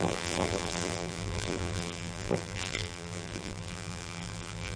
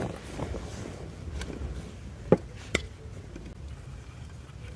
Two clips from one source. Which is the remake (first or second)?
first